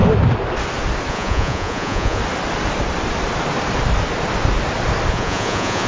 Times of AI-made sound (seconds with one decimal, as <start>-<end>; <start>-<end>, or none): 1.1-2.2; 5.1-5.9